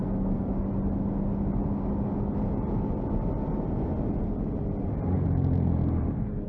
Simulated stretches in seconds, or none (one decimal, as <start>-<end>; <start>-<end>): 0.0-0.5